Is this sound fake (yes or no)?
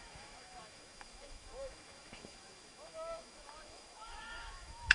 yes